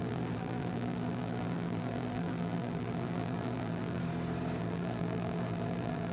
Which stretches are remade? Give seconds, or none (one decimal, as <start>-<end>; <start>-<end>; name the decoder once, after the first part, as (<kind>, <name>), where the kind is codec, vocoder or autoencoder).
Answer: 0.0-4.0 (vocoder, BigVGAN v2); 4.6-6.1